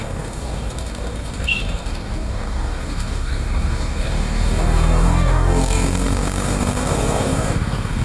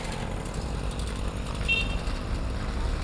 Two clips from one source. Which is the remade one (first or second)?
first